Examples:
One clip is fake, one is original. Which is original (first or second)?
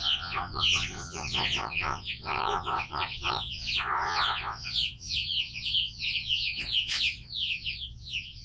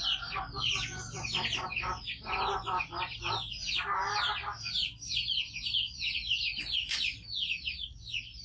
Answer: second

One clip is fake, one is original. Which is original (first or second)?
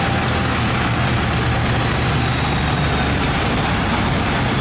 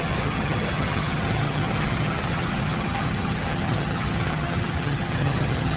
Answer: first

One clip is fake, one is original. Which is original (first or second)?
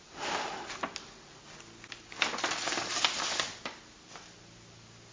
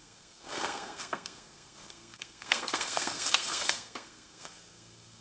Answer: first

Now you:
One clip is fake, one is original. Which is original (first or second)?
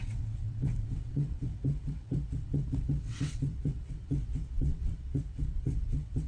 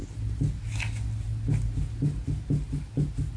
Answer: second